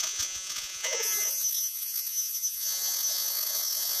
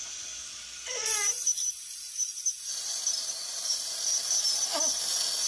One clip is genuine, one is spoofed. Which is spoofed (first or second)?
first